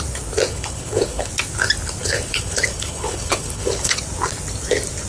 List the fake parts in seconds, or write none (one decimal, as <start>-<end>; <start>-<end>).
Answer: 0.5-1.3; 2.0-4.0